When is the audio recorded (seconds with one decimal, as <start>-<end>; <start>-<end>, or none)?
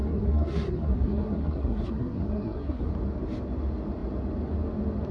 2.9-5.1